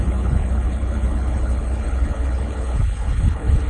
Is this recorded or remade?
remade